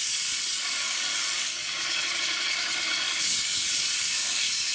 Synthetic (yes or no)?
yes